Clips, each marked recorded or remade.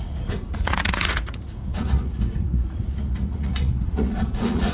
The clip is remade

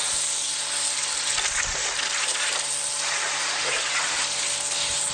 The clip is recorded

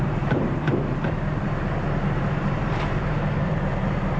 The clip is remade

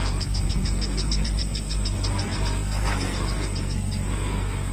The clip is remade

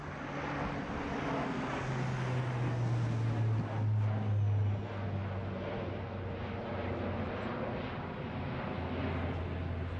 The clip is recorded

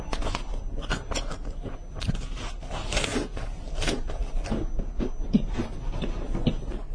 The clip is recorded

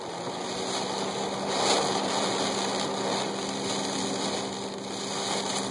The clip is recorded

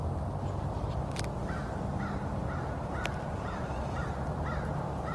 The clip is recorded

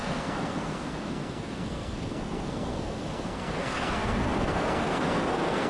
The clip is remade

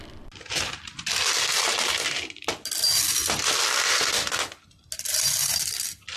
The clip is recorded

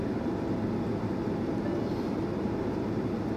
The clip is recorded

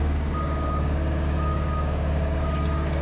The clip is remade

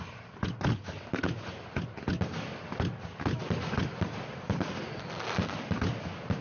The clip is recorded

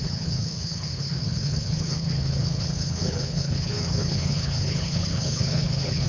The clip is remade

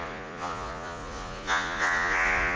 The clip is remade